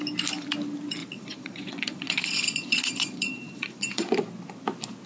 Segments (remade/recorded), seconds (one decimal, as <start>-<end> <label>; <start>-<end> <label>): 0.0-1.0 recorded; 1.0-4.1 remade; 4.1-5.1 recorded